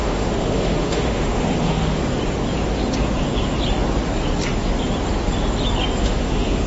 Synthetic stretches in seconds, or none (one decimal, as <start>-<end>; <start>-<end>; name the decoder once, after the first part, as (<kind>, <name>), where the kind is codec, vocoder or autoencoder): 0.0-2.0 (autoencoder, DAC-VAE); 6.0-6.7